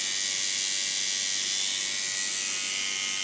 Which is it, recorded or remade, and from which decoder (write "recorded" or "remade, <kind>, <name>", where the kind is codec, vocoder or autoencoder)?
recorded